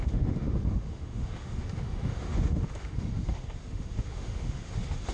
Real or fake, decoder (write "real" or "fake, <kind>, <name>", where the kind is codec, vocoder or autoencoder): fake, autoencoder, DAC-VAE